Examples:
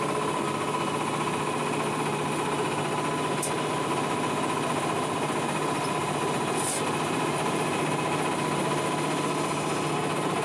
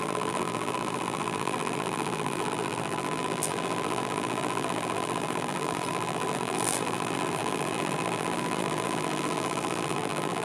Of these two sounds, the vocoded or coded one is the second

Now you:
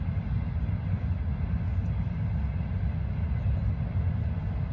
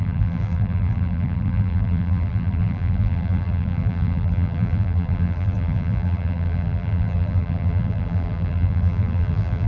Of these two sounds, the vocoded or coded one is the second